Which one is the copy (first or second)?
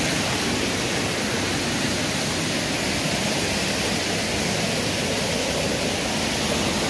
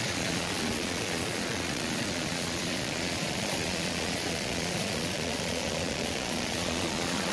second